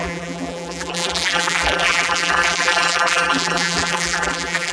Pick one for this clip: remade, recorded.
remade